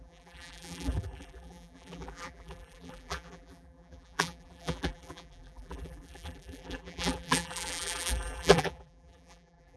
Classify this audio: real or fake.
fake